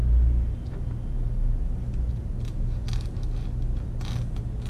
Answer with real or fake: real